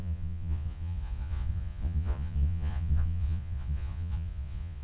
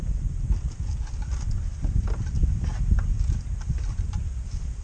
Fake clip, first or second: first